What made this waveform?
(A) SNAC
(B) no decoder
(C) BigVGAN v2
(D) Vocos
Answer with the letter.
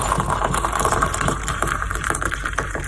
C